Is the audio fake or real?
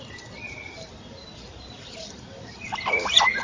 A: fake